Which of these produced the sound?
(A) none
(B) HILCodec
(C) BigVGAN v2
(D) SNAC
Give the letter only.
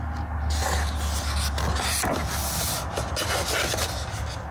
A